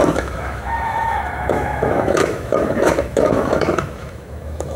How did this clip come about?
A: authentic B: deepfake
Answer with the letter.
B